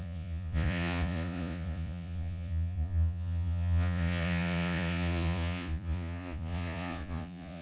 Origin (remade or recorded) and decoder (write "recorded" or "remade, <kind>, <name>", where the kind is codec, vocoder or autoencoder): remade, vocoder, Vocos